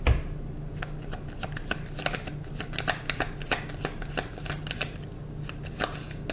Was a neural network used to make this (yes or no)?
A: no